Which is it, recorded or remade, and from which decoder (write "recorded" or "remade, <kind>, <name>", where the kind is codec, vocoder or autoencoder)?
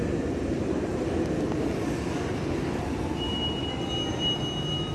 recorded